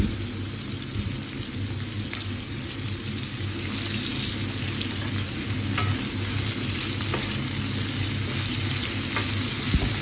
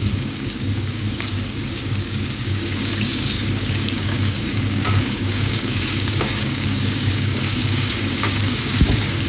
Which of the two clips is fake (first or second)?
second